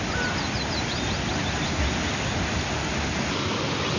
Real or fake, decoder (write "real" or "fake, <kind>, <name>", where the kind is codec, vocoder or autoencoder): real